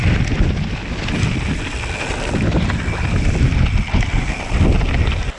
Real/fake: real